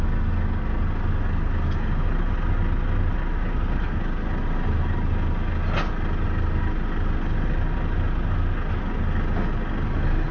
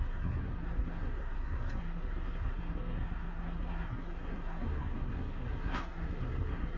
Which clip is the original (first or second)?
first